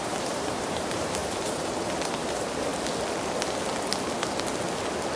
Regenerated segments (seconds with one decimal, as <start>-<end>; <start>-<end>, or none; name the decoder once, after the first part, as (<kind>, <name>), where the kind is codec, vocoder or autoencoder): 0.0-2.7 (vocoder, BigVGAN v2)

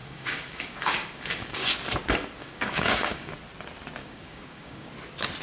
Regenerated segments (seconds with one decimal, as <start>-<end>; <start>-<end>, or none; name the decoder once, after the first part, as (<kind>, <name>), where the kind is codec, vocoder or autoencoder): 0.0-1.7 (codec, DAC); 2.4-3.3; 4.0-4.9

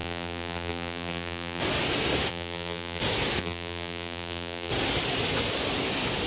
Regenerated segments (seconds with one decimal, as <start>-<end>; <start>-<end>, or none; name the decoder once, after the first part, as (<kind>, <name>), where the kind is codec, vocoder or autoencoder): 0.0-1.6 (vocoder, BigVGAN v2); 2.3-3.0; 3.4-4.7

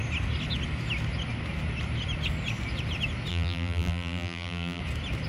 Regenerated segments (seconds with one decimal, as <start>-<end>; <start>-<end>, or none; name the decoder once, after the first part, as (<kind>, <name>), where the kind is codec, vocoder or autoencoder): 3.3-4.8 (vocoder, BigVGAN v2)

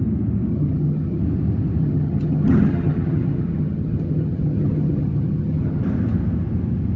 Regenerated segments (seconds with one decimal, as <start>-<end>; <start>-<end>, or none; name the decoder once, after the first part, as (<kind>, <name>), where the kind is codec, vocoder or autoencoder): 0.5-1.2 (vocoder, HiFi-GAN); 1.8-5.8